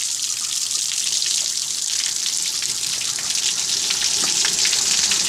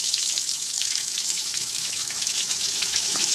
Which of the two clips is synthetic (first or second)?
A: second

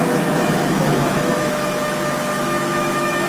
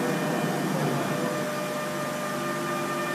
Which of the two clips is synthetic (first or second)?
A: first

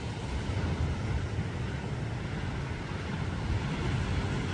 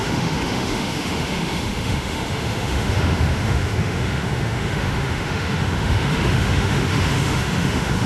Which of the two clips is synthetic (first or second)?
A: second